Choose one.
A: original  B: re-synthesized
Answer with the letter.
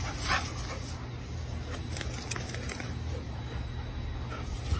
A